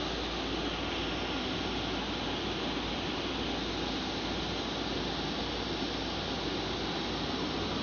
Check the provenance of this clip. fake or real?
real